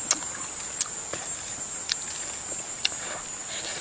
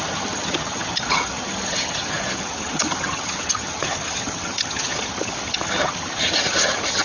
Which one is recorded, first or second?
first